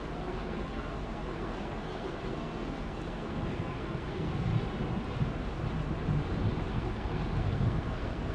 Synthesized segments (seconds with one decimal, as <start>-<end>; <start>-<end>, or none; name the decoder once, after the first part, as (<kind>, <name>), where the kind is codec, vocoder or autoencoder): 0.0-4.5 (codec, SNAC); 6.7-8.3